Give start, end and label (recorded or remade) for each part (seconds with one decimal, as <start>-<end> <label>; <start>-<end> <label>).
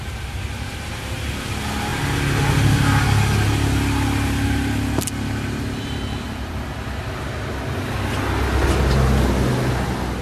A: 0.0-1.9 remade; 1.9-5.8 recorded; 5.8-7.0 remade; 7.0-10.2 recorded